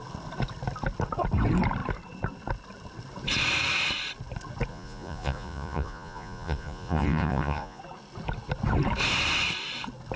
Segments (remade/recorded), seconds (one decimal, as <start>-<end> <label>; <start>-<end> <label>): 0.0-4.7 recorded; 4.7-7.8 remade; 7.8-10.2 recorded